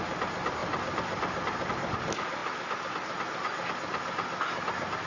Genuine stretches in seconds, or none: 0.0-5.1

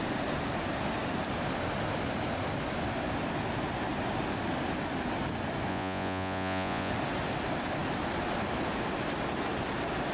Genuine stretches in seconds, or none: 0.0-5.7; 6.9-10.1

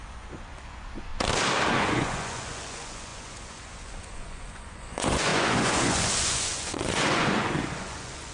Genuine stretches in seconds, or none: 1.1-1.7